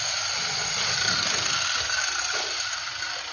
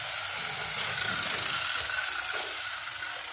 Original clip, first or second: second